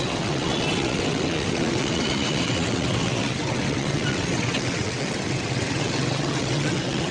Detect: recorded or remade remade